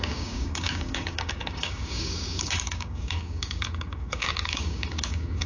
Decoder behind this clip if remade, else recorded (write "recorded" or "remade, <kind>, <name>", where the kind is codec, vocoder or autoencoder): remade, codec, DAC